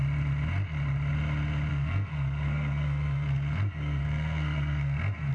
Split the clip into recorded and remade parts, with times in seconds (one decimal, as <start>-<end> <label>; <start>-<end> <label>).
0.0-1.7 recorded; 1.7-5.3 remade